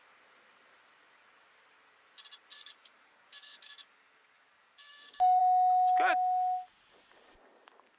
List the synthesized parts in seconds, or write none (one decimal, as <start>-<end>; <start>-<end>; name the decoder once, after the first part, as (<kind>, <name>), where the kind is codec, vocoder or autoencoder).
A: 2.5-5.4 (codec, DAC)